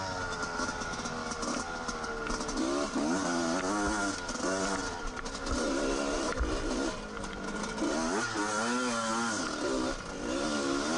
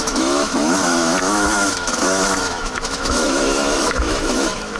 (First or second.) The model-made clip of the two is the second